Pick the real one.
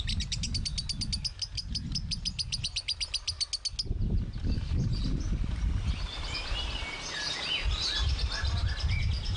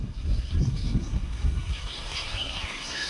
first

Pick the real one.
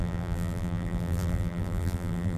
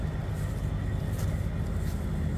second